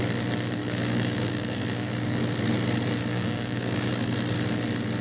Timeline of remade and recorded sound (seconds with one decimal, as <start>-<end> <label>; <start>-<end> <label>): 0.0-0.6 recorded; 0.6-2.2 remade; 2.2-3.0 recorded; 3.0-3.9 remade; 3.9-5.0 recorded